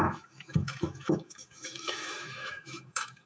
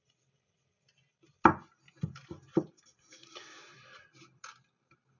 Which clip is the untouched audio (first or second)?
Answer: second